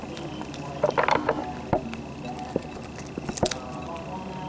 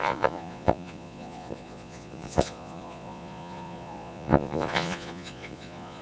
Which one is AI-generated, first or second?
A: second